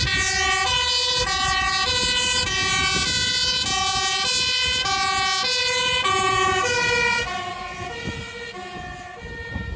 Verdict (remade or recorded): recorded